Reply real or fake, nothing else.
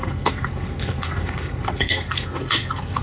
fake